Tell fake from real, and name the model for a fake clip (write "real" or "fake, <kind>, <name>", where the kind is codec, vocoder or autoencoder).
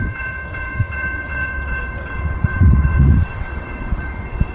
fake, vocoder, WaveNeXt